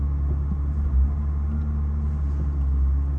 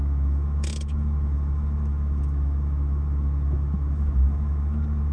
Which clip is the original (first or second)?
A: first